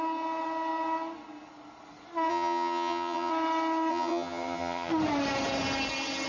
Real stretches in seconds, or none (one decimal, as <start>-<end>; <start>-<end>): 0.0-2.3; 3.3-3.9; 4.9-6.3